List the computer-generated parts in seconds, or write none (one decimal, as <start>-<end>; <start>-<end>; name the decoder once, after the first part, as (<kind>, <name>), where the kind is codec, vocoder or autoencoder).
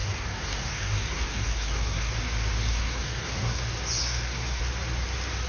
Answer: 0.0-2.1 (codec, SNAC); 2.7-3.6; 4.0-4.6